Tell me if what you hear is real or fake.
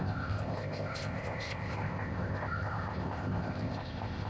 fake